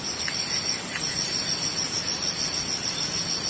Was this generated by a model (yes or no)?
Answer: no